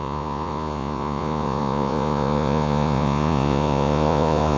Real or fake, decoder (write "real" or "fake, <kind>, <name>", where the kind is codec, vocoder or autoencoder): fake, vocoder, Vocos